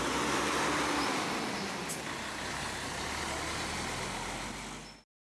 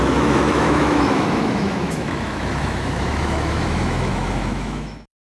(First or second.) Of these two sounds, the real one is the first